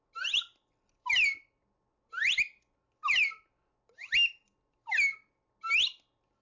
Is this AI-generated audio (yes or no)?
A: no